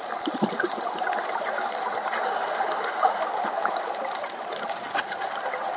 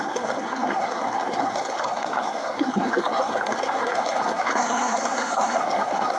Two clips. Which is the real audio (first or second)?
first